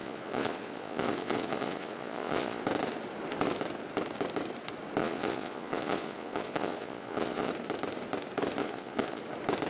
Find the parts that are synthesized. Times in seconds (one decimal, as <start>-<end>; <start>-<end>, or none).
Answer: 0.0-2.6; 5.0-7.5; 8.6-9.2